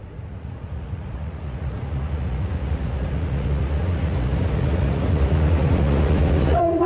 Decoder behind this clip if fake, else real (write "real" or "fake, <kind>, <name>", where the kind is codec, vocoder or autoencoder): fake, vocoder, Vocos